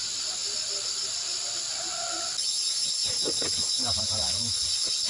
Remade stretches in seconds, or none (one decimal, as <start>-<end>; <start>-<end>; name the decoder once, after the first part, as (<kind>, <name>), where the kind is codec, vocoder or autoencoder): none